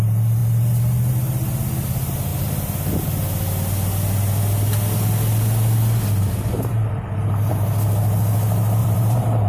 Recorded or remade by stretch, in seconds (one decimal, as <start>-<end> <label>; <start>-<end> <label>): 0.0-8.8 recorded; 8.8-9.5 remade

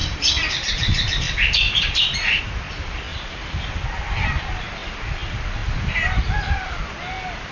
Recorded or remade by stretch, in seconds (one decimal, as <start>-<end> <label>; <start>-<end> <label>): 0.0-2.4 remade; 2.4-3.1 recorded; 3.1-3.7 remade; 3.7-7.5 recorded